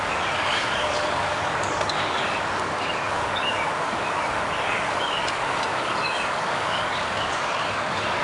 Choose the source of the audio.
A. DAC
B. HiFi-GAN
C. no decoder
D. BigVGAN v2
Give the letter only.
A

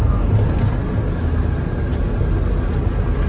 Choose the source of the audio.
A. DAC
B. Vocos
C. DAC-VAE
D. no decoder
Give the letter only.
D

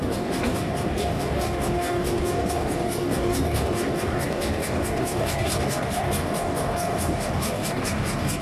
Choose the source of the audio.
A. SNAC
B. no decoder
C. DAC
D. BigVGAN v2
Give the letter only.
C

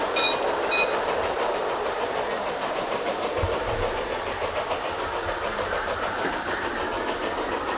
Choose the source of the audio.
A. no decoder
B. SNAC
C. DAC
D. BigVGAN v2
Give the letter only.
A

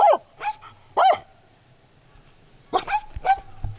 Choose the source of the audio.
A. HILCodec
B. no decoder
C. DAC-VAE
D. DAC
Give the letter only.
B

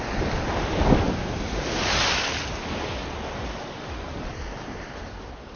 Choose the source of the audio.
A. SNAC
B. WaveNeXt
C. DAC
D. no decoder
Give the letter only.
D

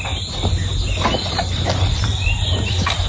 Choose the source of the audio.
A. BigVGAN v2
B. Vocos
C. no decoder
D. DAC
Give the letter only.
C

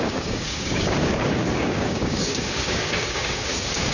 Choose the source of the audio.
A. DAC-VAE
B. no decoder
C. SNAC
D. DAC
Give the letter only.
D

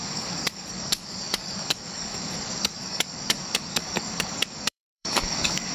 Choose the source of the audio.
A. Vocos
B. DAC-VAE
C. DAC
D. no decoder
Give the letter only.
C